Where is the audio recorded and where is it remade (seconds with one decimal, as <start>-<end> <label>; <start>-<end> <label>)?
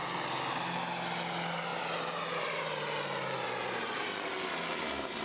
0.0-5.2 recorded